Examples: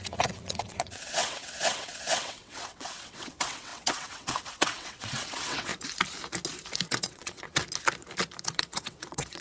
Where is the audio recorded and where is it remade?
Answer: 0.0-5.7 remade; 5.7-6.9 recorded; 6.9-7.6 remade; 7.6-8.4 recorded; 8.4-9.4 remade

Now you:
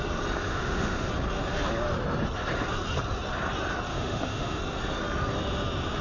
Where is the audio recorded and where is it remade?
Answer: 0.0-0.5 recorded; 0.5-1.1 remade; 1.1-3.9 recorded; 3.9-4.6 remade; 4.6-6.0 recorded